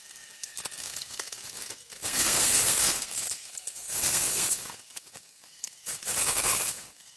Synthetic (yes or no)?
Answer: yes